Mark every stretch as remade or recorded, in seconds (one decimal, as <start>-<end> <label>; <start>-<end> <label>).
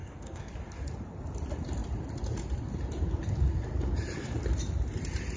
0.0-0.5 remade; 0.5-5.4 recorded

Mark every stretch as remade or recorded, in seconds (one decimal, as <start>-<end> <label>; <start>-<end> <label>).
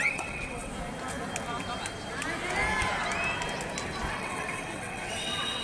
0.0-0.7 remade; 0.7-4.1 recorded; 4.1-5.6 remade